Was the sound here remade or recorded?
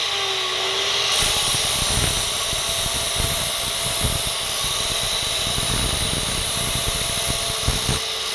recorded